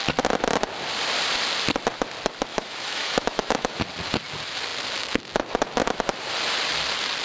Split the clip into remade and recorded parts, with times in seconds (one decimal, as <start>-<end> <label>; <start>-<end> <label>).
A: 0.0-2.5 recorded; 2.5-3.8 remade; 3.8-7.2 recorded